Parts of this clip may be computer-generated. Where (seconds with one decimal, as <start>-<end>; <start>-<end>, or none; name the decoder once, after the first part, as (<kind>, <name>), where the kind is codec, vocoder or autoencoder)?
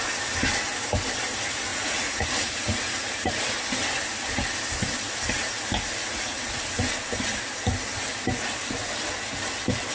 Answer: 1.7-3.3 (vocoder, Vocos); 6.0-6.6